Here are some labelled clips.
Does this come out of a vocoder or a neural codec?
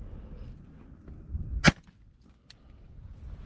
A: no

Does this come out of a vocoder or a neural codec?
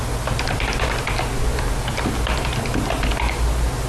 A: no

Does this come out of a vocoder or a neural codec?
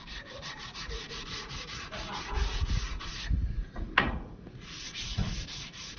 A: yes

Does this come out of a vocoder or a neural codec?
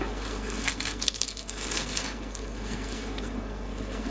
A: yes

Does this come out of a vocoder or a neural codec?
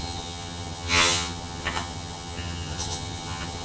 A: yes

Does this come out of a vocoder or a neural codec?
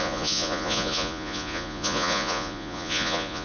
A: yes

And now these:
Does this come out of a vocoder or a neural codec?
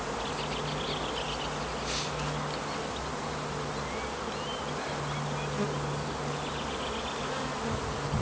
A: no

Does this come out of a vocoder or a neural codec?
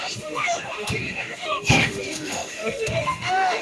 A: yes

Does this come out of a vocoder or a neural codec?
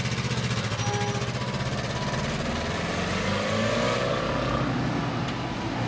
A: no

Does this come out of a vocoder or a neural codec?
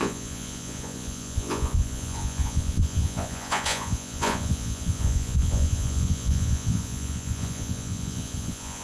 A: yes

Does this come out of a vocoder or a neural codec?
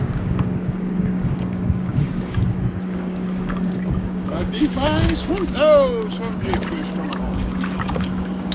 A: yes